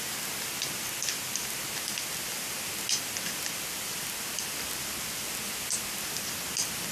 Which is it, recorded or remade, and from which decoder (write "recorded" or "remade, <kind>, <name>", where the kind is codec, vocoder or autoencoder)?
recorded